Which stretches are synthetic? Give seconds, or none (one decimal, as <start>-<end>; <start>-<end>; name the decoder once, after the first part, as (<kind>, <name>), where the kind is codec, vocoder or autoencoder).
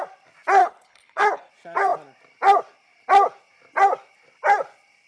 0.6-1.5 (codec, HILCodec)